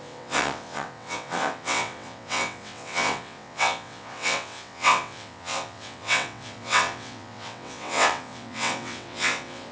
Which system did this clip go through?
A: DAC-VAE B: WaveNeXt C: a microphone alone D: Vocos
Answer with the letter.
B